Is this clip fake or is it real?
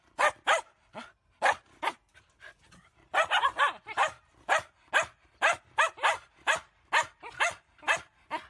real